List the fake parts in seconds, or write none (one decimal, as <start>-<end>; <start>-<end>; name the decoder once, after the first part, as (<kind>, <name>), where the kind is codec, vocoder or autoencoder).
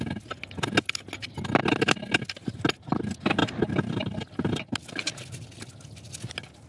none